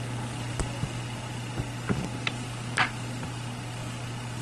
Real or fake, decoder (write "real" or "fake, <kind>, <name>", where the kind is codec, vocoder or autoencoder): real